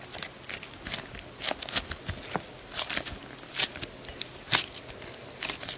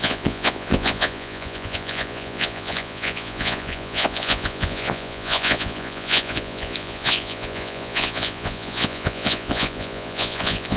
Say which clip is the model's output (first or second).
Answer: second